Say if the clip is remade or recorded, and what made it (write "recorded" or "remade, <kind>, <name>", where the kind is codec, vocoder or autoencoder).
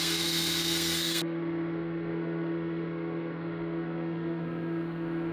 remade, codec, SNAC